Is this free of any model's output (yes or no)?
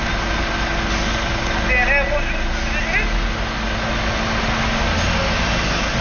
yes